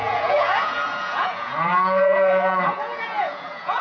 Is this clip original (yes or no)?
no